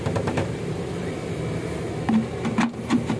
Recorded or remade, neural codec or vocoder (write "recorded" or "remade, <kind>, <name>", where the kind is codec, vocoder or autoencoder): recorded